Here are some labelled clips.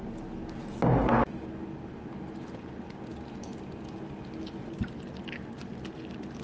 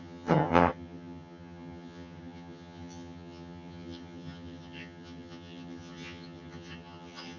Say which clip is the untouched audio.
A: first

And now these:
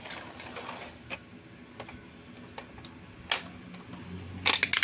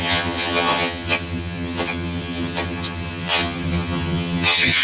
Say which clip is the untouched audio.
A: first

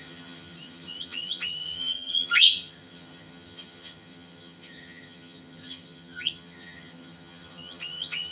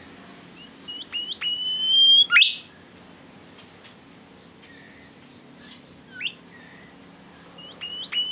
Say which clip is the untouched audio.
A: second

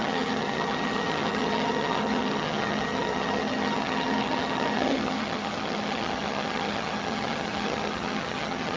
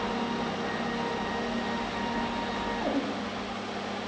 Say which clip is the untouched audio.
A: second